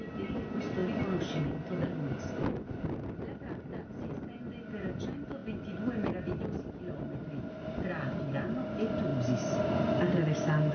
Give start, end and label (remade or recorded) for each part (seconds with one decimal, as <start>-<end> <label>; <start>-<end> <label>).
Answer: 0.0-10.7 recorded